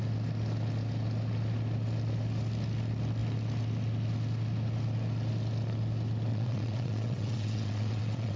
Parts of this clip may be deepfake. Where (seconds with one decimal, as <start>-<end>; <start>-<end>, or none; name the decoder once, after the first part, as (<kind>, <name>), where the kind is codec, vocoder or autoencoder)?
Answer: 6.3-8.4 (vocoder, WaveNeXt)